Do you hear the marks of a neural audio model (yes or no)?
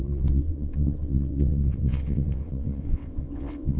yes